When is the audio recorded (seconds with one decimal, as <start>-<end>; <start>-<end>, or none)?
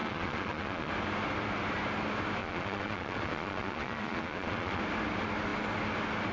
0.9-2.4; 4.8-6.3